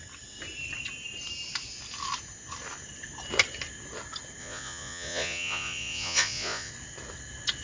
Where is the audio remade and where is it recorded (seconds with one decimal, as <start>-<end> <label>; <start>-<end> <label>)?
0.0-4.4 recorded; 4.4-6.7 remade; 6.7-7.6 recorded